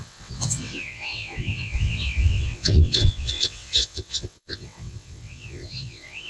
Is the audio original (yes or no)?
no